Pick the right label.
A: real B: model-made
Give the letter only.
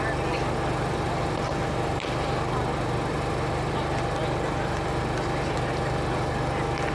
A